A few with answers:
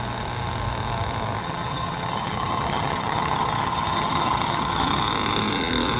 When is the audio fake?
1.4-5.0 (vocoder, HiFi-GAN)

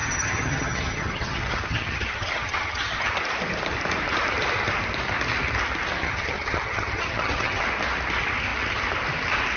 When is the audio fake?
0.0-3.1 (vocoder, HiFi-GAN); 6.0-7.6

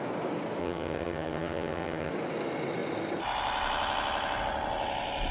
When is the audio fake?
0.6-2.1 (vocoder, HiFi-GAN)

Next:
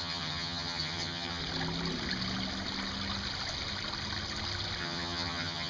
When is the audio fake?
0.0-1.4 (vocoder, HiFi-GAN); 4.8-5.7

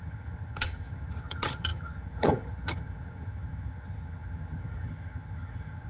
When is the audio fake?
0.0-5.9 (vocoder, HiFi-GAN)

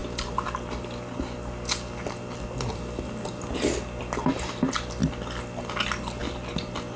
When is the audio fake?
none

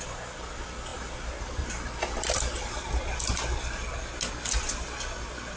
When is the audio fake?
none